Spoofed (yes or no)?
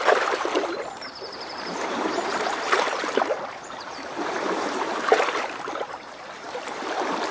yes